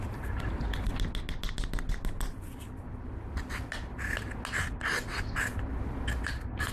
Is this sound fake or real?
real